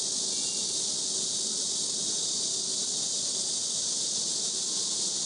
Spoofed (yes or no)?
no